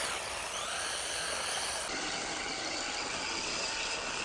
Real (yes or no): yes